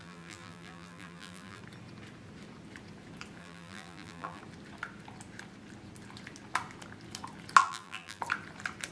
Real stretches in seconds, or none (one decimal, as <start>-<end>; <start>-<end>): 1.6-3.4; 4.4-7.6; 8.2-8.9